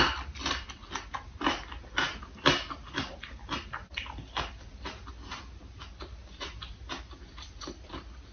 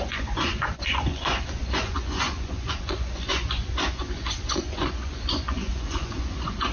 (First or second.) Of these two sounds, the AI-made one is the second